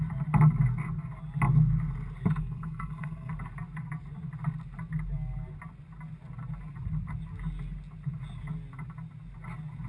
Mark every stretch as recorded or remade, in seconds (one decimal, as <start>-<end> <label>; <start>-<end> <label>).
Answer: 0.0-2.4 recorded; 2.4-3.3 remade; 3.3-9.9 recorded